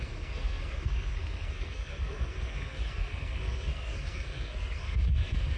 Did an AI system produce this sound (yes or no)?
yes